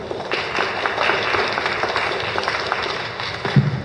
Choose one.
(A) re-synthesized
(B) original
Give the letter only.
B